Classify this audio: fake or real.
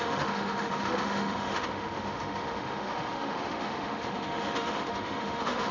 fake